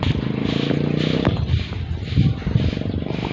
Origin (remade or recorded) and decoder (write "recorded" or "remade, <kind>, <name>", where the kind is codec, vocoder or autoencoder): recorded